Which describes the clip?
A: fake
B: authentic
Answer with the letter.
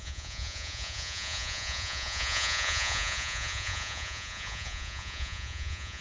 A